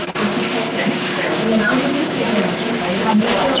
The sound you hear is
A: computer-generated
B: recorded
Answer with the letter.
A